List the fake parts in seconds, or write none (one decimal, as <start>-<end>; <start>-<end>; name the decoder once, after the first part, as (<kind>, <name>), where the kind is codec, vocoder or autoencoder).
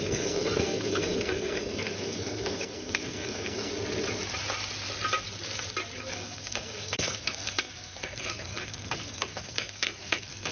0.0-3.7 (codec, SNAC); 6.0-10.5